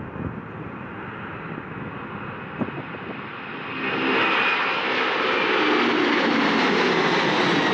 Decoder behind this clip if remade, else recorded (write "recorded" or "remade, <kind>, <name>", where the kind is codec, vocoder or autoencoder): recorded